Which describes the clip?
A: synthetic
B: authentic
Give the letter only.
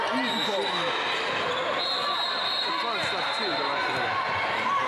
B